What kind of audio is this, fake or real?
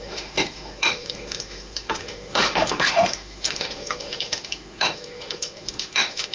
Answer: fake